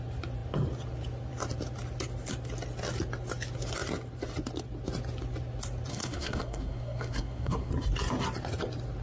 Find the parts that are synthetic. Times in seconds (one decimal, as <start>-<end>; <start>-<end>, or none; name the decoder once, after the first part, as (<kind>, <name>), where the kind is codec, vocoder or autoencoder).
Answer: 5.9-7.7 (codec, SNAC)